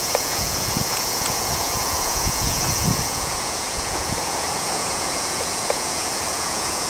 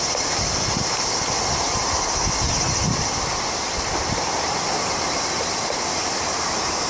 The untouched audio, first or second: second